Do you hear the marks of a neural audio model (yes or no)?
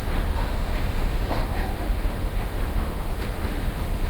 yes